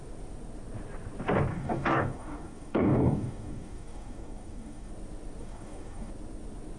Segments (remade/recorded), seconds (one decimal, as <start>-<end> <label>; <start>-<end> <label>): 0.0-1.5 recorded; 1.5-4.9 remade; 4.9-5.4 recorded; 5.4-6.1 remade; 6.1-6.8 recorded